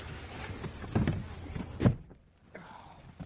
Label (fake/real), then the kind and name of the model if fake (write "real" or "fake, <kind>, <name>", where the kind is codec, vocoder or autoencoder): real